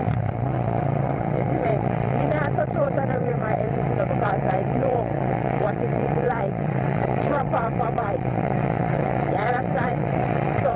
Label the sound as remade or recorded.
remade